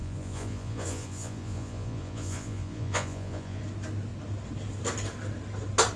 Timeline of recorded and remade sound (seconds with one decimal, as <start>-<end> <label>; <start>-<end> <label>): 0.0-3.6 remade; 3.6-6.0 recorded